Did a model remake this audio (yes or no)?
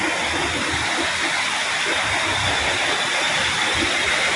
no